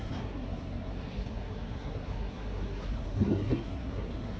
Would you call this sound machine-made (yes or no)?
yes